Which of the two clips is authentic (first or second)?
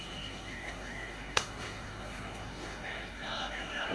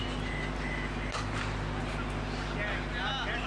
second